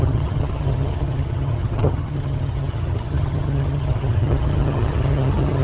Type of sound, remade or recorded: remade